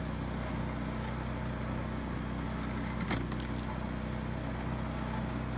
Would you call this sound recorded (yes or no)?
yes